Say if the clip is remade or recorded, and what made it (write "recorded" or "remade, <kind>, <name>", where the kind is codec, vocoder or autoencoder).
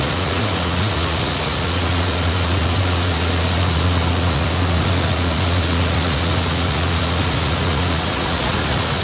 remade, vocoder, Vocos